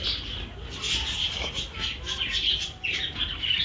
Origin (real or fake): real